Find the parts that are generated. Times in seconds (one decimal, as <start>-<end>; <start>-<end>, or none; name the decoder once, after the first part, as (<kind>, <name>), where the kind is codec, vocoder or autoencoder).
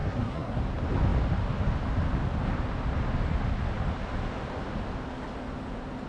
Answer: 0.0-0.6 (codec, SNAC)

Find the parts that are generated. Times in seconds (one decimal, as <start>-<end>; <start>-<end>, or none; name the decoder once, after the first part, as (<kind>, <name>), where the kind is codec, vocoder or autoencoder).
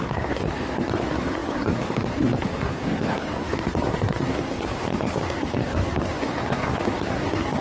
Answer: 0.0-7.6 (codec, SNAC)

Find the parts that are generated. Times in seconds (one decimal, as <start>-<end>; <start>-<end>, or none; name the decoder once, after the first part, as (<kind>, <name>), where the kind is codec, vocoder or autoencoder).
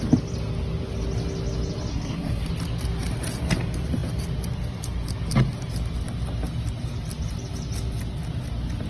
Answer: 1.9-2.5 (codec, SNAC)